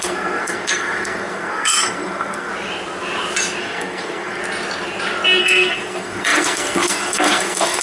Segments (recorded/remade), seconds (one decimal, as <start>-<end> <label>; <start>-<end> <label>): 0.0-2.5 remade; 2.5-3.6 recorded; 3.6-4.4 remade; 4.4-5.4 recorded; 5.4-7.8 remade